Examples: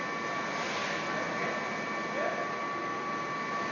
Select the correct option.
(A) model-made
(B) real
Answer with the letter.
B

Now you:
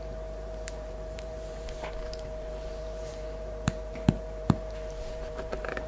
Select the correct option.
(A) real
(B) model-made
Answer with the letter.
B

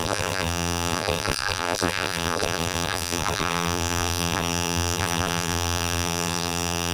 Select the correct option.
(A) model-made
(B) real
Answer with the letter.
A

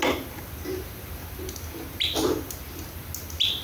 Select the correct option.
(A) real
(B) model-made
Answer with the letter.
A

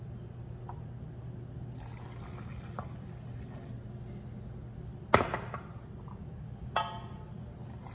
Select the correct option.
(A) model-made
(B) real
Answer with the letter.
B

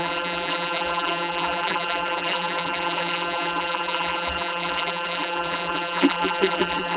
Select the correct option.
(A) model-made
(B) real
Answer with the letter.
A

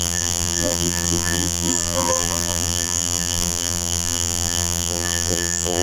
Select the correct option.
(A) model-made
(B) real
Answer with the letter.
A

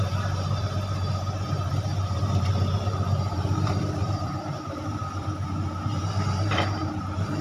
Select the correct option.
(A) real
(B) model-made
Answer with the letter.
B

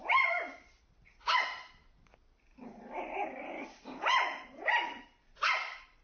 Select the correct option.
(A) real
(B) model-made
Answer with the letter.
B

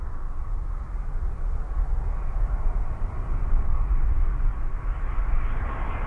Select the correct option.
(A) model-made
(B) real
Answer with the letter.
B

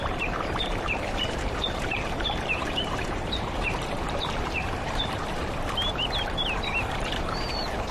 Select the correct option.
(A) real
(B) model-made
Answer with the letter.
B